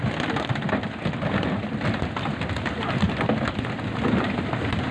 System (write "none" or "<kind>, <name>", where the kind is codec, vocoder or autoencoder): none